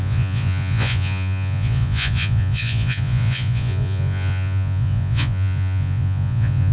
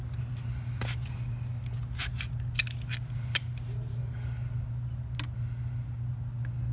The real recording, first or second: second